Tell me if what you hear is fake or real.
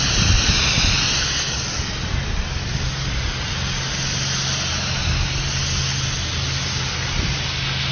real